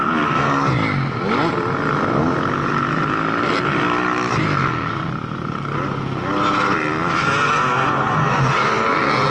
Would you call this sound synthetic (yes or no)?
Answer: no